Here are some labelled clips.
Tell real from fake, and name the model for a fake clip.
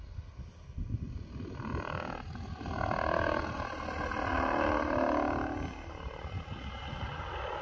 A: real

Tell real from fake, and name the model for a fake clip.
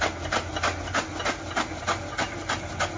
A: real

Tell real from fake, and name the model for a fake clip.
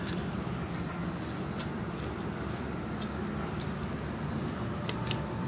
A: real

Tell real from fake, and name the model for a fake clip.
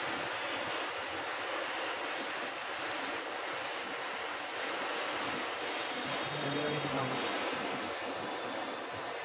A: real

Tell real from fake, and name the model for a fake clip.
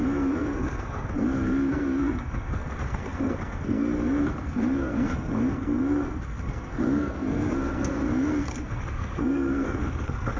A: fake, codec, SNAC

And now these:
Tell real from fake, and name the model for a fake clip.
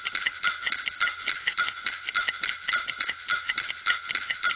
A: real